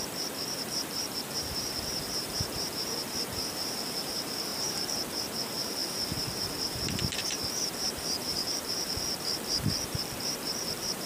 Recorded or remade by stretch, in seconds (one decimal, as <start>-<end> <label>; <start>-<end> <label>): 0.0-11.1 remade